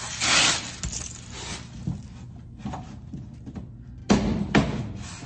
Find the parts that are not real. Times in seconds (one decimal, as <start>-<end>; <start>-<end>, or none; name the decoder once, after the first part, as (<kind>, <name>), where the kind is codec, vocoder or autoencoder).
none